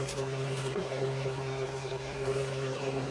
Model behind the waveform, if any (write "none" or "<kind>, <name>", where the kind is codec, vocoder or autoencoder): codec, SNAC